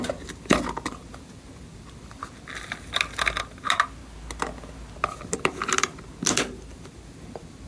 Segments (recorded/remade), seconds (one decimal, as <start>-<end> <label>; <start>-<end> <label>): 0.0-7.7 recorded